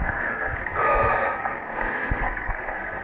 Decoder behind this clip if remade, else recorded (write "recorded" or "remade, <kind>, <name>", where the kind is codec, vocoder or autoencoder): remade, codec, SNAC